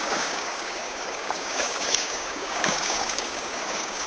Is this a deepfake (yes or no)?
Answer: yes